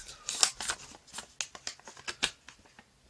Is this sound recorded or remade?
recorded